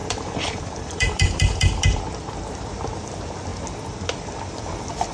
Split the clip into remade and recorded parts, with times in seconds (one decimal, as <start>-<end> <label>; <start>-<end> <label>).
0.0-2.0 remade; 2.0-5.1 recorded